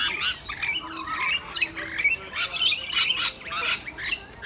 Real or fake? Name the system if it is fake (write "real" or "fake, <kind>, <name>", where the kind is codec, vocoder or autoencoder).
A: real